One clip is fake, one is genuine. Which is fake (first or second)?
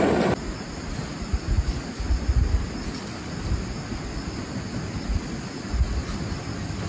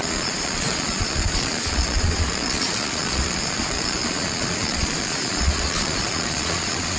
second